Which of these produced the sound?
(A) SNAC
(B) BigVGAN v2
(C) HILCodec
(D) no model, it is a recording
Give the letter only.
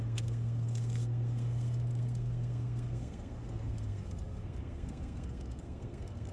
A